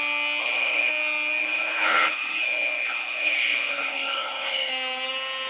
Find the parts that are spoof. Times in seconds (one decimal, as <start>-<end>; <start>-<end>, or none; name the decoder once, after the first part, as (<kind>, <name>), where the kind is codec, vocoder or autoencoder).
0.4-0.9 (codec, HILCodec); 1.4-4.7